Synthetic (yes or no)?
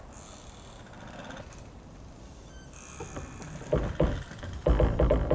no